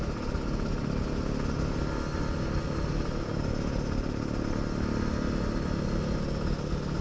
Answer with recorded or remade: recorded